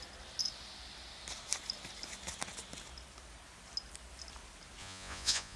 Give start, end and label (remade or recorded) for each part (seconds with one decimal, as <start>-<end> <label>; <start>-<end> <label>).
0.0-4.8 recorded; 4.8-5.6 remade